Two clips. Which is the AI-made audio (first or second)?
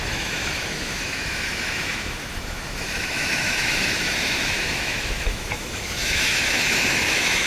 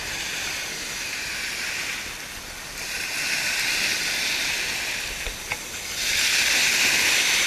first